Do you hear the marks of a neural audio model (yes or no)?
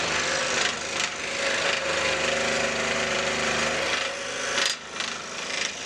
yes